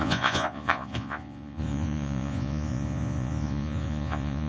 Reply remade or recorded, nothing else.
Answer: remade